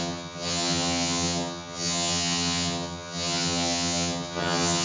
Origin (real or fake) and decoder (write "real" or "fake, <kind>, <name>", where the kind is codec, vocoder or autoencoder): fake, vocoder, HiFi-GAN